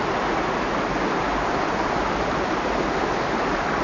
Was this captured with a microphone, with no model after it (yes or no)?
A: yes